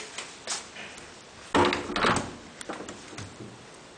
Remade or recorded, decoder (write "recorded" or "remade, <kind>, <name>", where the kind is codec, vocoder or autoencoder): recorded